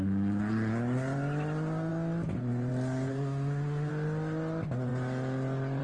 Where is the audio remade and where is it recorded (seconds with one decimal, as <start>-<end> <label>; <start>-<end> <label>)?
0.0-3.1 recorded; 3.1-3.9 remade; 3.9-5.8 recorded